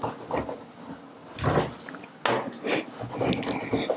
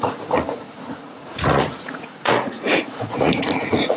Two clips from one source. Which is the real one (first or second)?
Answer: first